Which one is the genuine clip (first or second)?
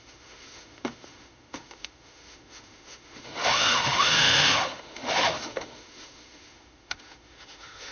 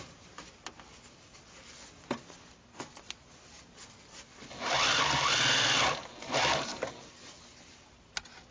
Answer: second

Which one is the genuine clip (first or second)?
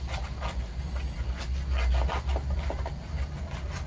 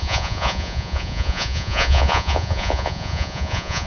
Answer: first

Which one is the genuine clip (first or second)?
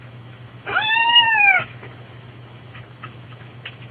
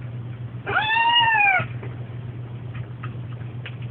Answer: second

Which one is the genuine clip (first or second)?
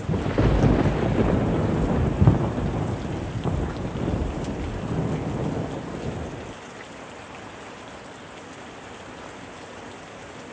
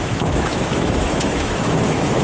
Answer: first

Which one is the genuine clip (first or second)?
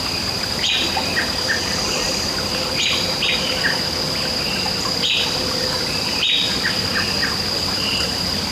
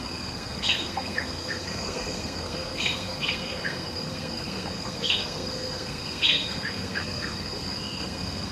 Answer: first